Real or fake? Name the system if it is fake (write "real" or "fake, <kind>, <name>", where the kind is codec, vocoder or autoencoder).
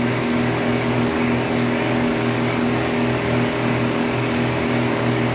fake, codec, DAC